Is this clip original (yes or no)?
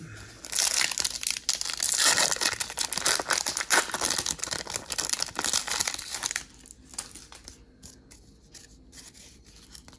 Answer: yes